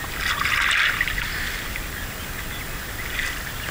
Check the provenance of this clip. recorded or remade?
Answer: recorded